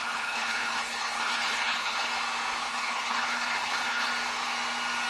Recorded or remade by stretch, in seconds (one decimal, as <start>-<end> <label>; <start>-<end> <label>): 0.0-2.1 remade; 2.1-2.6 recorded; 2.6-4.1 remade; 4.1-5.1 recorded